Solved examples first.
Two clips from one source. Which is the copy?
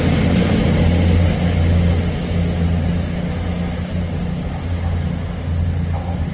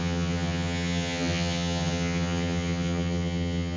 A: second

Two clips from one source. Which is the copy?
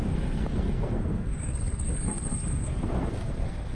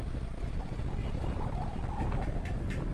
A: first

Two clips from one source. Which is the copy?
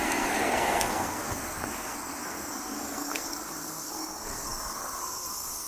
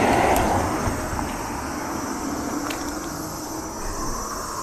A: first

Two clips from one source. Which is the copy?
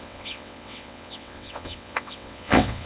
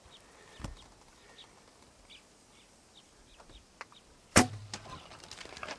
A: first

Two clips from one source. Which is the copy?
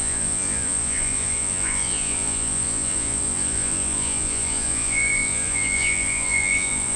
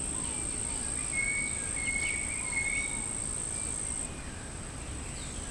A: first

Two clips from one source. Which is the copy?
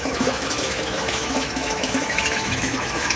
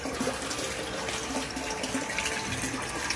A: first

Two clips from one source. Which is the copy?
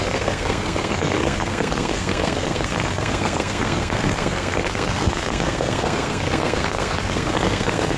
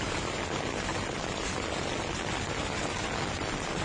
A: first